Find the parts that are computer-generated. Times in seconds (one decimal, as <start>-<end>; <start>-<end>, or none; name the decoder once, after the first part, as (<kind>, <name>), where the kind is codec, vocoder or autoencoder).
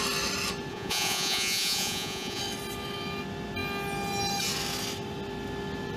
0.7-2.4 (vocoder, Vocos)